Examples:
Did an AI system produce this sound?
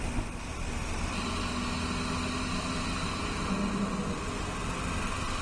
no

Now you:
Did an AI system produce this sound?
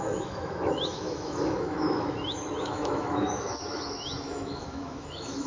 yes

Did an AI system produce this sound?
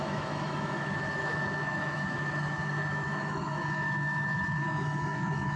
yes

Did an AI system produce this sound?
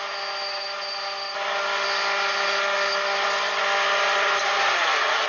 no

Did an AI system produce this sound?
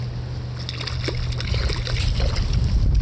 no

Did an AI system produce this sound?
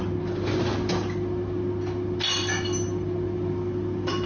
no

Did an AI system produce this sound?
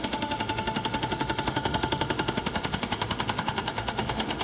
yes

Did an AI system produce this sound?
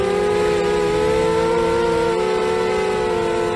no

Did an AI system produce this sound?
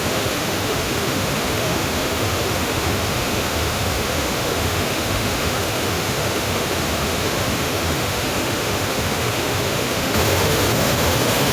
yes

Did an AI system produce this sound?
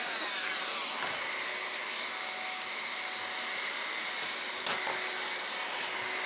no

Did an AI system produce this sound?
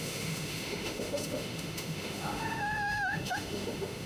yes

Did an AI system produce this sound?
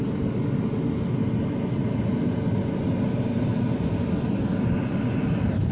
no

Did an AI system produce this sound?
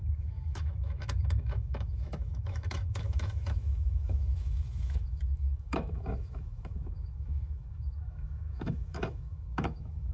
yes